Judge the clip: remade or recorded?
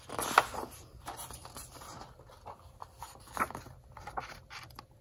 recorded